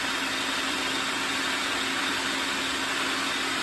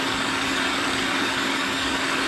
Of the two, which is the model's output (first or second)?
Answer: second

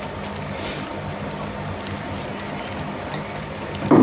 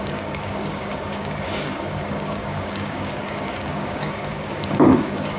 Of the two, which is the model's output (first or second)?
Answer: second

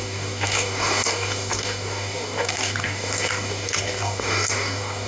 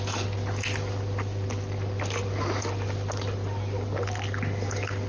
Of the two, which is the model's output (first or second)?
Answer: first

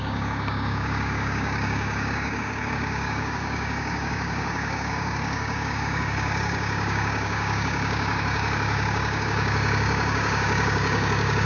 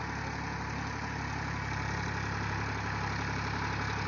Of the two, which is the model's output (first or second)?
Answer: first